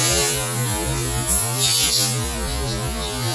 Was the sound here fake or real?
real